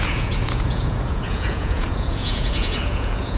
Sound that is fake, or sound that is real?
fake